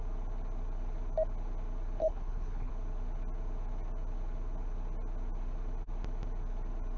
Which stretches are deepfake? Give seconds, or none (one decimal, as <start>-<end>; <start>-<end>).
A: 2.0-2.7